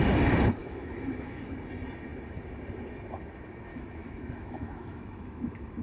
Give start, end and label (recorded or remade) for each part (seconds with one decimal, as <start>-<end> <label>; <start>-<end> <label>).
0.0-0.6 recorded; 0.6-1.5 remade; 1.5-3.7 recorded; 3.7-5.8 remade